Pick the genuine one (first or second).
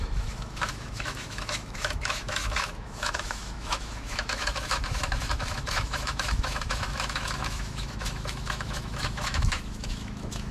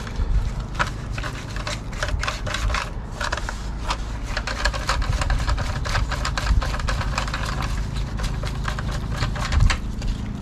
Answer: second